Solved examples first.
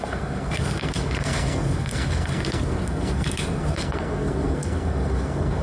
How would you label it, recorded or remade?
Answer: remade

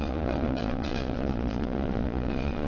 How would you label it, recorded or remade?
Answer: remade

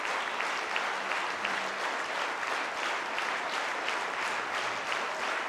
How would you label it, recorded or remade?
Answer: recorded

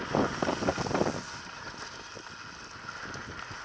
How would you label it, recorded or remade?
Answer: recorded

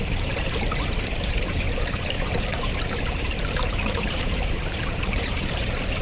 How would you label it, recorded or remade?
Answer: remade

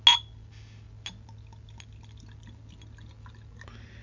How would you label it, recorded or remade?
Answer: recorded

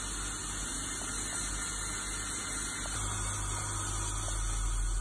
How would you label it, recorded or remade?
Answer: recorded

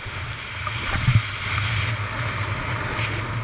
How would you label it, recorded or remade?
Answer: recorded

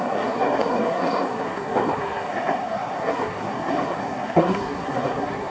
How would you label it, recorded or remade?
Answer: remade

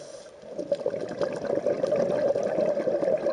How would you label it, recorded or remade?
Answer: recorded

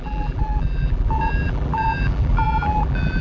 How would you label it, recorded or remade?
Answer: remade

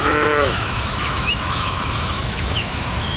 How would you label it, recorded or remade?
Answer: remade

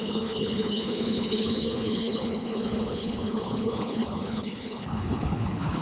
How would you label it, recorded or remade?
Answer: remade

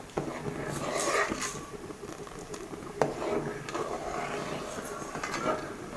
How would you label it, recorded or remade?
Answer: recorded